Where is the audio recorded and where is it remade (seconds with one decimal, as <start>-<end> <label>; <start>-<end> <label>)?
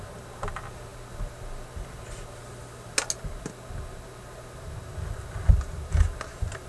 0.0-6.7 recorded